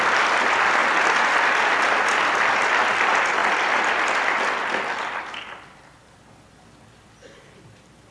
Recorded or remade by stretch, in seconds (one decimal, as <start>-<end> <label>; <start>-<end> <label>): 0.0-3.4 recorded; 3.4-3.9 remade; 3.9-8.1 recorded

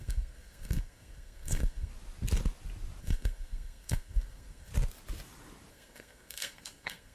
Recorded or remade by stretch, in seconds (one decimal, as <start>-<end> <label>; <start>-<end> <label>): 0.0-1.9 remade; 1.9-3.0 recorded; 3.0-4.7 remade; 4.7-5.7 recorded; 5.7-7.1 remade

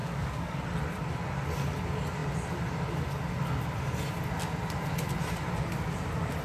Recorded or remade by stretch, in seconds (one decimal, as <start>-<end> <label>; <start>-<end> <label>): 0.0-0.6 remade; 0.6-6.4 recorded

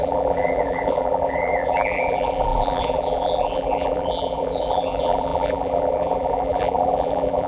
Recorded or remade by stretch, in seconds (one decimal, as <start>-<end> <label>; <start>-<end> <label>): 0.0-7.5 remade

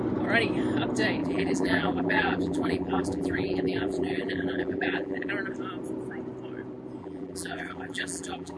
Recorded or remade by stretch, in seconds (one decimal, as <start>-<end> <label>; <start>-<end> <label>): 0.0-1.2 recorded; 1.2-5.3 remade; 5.3-7.0 recorded; 7.0-8.6 remade

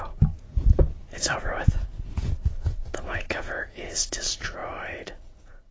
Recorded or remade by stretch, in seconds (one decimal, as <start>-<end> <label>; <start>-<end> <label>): 0.0-4.6 remade; 4.6-5.1 recorded; 5.1-5.7 remade

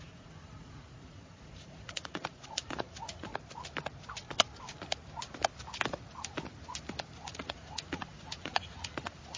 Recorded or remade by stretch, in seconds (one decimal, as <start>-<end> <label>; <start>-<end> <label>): 0.0-3.3 remade; 3.3-7.3 recorded; 7.3-9.4 remade

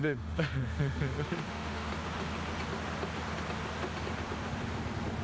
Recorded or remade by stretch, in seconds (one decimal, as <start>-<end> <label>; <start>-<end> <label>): 0.0-1.9 remade; 1.9-5.2 recorded